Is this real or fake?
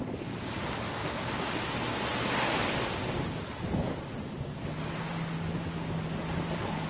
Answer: real